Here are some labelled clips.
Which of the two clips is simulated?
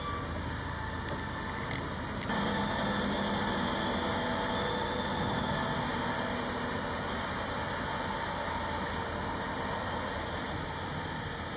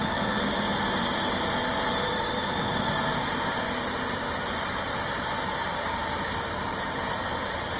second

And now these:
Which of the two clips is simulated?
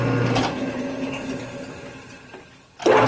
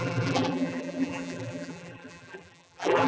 second